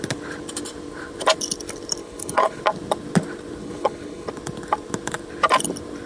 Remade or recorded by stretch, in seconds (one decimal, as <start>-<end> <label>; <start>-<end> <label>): 0.0-2.0 recorded; 2.0-2.6 remade; 2.6-3.6 recorded; 3.6-4.3 remade; 4.3-6.1 recorded